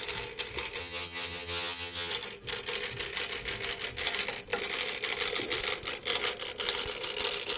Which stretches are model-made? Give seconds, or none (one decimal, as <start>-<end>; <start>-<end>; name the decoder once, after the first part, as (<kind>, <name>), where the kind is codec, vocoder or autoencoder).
0.8-2.1 (vocoder, HiFi-GAN)